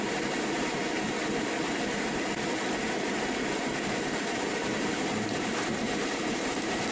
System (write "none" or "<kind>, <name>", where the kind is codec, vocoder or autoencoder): vocoder, BigVGAN v2